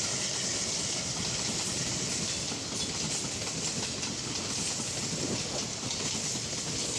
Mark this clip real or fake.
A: real